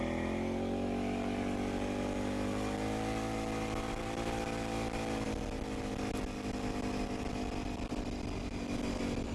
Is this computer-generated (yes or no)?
no